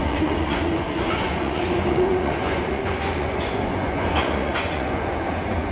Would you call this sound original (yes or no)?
no